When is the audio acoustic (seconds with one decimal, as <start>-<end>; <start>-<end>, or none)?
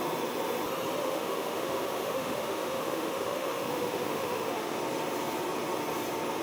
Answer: 0.0-1.0; 4.8-6.4